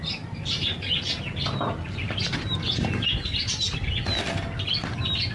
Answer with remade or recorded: recorded